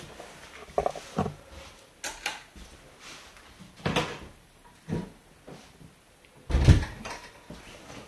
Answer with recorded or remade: recorded